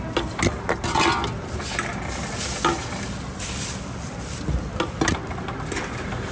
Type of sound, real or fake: real